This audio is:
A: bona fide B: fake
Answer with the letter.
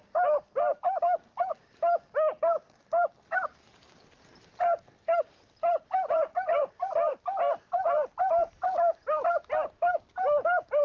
A